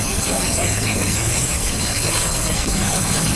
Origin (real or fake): fake